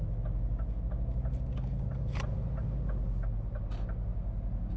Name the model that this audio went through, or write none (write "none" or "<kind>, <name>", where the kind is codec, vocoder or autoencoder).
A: none